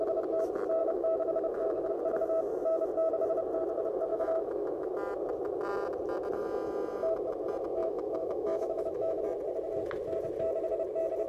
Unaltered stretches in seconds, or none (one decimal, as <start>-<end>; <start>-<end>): 0.0-0.8; 1.9-4.1; 4.9-7.8; 9.2-11.3